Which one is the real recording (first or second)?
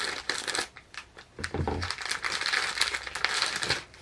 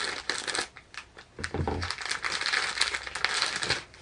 second